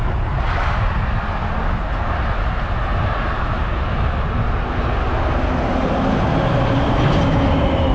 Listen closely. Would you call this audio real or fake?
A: real